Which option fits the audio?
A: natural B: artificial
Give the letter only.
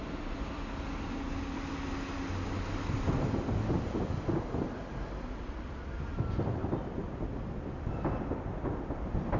A